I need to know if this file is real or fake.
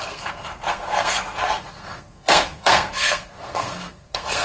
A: fake